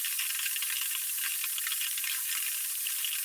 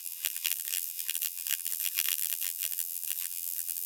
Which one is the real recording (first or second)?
first